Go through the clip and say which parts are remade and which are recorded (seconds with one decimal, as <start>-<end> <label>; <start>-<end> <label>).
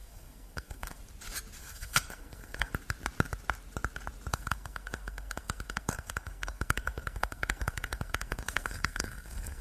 0.0-1.0 remade; 1.0-1.6 recorded; 1.6-2.7 remade; 2.7-4.3 recorded; 4.3-9.6 remade